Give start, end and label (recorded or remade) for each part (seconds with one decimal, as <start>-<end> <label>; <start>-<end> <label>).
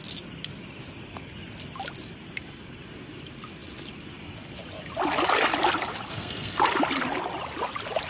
0.0-6.1 recorded; 6.1-6.6 remade; 6.6-8.1 recorded